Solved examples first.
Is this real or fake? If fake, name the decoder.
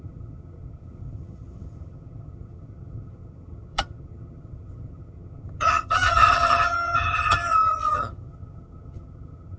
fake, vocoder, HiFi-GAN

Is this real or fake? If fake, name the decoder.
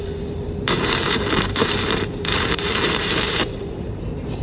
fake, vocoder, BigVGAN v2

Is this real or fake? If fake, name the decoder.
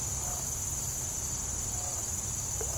real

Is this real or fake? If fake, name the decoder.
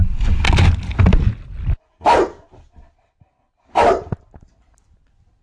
real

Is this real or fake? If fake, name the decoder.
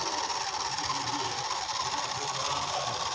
real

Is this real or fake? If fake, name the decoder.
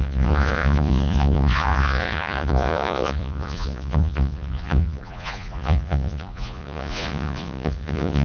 fake, vocoder, Vocos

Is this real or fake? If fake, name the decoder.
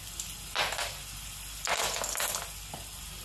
real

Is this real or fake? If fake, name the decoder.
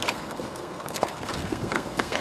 fake, codec, SNAC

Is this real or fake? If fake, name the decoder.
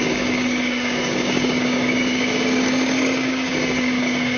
fake, codec, DAC